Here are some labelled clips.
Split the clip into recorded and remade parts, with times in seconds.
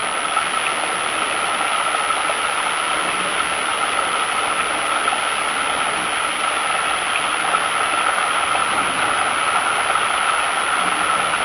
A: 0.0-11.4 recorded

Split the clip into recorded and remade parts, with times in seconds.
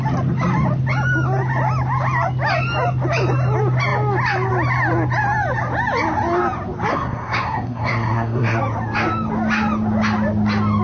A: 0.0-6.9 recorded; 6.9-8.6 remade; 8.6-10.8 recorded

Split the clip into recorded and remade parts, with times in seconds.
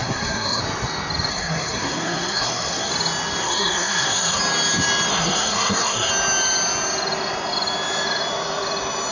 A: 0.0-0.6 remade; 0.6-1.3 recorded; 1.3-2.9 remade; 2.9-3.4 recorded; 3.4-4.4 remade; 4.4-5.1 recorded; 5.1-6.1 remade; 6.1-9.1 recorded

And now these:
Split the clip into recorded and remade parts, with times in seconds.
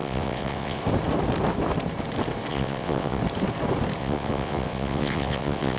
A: 0.0-0.8 remade; 0.8-2.5 recorded; 2.5-3.2 remade; 3.2-4.0 recorded; 4.0-5.8 remade